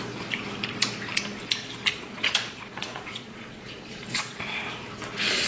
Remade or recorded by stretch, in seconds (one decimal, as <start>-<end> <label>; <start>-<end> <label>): 0.0-1.9 recorded; 1.9-4.6 remade; 4.6-5.5 recorded